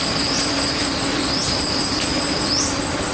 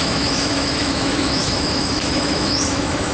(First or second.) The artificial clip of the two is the second